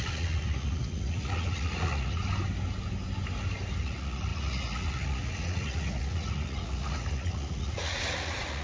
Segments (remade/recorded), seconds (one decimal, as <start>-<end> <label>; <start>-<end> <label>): 0.0-2.2 remade; 2.2-3.8 recorded; 3.8-8.6 remade